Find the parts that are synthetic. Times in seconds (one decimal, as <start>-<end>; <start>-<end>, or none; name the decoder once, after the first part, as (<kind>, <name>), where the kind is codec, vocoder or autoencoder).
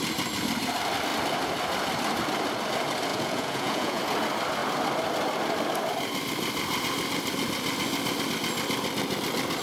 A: 3.1-4.0 (vocoder, Vocos)